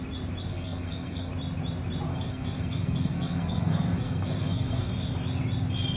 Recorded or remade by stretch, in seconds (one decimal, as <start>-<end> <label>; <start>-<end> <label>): 0.0-0.5 recorded; 0.5-1.3 remade; 1.3-2.1 recorded; 2.1-4.9 remade; 4.9-6.0 recorded